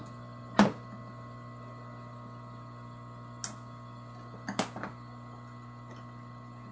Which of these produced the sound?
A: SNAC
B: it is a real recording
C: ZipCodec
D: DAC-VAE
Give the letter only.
B